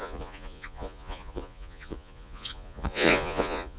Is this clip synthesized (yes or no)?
yes